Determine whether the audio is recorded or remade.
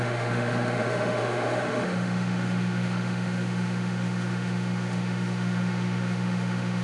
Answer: remade